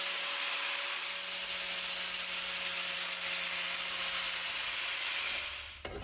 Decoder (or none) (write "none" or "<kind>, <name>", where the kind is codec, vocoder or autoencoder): none